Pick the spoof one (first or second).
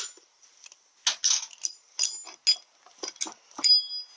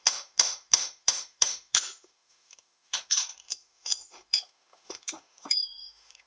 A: second